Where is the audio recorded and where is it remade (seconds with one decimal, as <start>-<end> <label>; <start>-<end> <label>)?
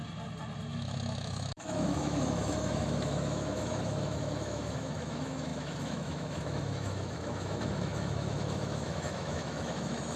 0.0-0.7 recorded; 0.7-10.2 remade